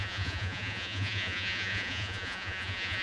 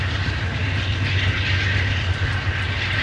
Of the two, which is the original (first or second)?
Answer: second